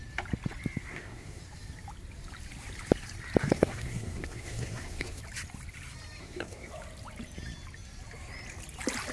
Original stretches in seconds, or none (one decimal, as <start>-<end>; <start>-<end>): 0.0-0.9; 1.4-3.4; 5.2-6.2; 6.7-9.1